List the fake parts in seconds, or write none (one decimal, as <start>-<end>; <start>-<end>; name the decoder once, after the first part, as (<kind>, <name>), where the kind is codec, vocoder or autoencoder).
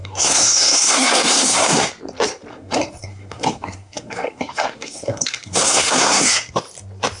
0.0-1.9 (codec, SNAC); 2.5-6.5